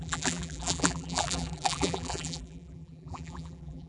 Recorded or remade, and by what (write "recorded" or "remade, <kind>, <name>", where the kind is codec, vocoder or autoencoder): remade, vocoder, BigVGAN v2